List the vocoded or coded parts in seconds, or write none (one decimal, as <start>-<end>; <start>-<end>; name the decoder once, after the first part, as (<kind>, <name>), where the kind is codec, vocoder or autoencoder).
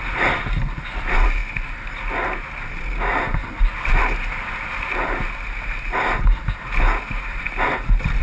none